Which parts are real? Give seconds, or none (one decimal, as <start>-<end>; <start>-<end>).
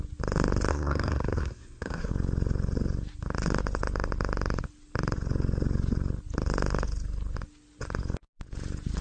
0.0-0.7; 2.1-9.0